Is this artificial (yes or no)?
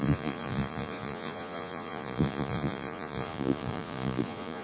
yes